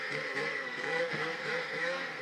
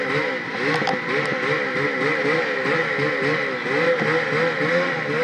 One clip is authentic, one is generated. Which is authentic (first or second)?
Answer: second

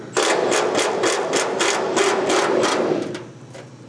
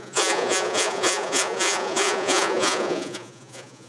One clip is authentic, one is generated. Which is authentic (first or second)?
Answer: first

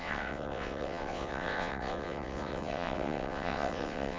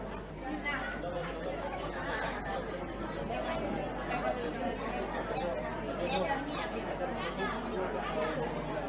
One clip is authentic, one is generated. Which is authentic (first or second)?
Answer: second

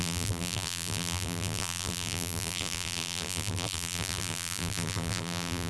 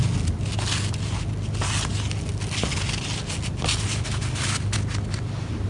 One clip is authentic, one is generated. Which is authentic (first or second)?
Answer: second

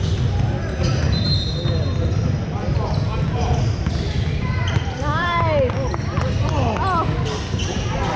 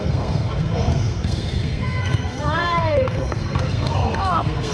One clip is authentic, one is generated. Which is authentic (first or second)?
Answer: first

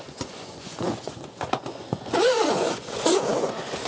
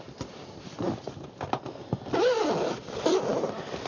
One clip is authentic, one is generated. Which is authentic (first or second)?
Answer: second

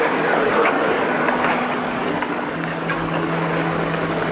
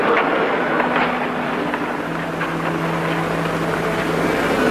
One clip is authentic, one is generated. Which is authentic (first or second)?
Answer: second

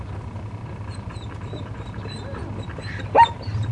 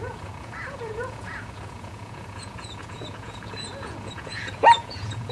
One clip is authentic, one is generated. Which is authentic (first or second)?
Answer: first